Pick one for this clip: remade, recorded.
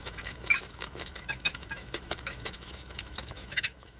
remade